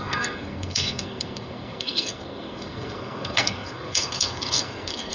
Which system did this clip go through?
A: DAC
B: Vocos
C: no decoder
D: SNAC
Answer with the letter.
D